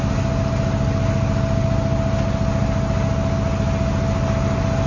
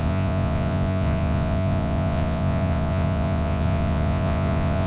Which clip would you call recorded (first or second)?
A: first